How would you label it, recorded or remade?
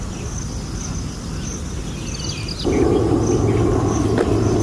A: recorded